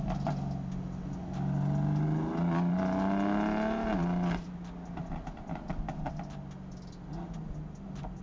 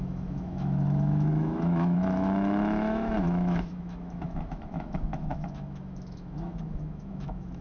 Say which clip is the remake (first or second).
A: second